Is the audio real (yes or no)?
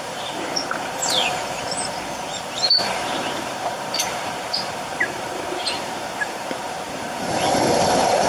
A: no